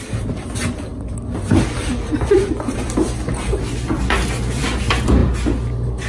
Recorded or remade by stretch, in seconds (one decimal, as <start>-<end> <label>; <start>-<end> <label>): 0.0-6.1 recorded